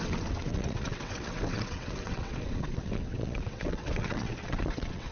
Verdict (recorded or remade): remade